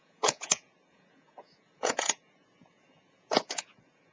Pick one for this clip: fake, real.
fake